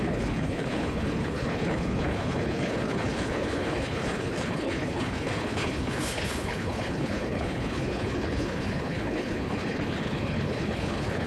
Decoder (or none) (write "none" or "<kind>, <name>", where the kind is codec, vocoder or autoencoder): codec, HILCodec